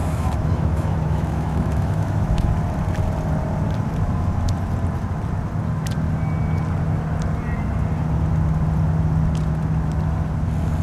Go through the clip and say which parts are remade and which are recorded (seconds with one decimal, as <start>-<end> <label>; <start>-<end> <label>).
0.0-2.5 remade; 2.5-10.8 recorded